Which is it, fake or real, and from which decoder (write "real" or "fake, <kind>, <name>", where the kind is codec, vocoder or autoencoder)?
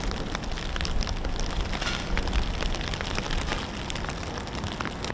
real